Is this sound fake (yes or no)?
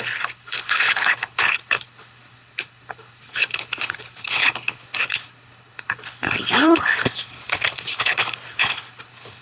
yes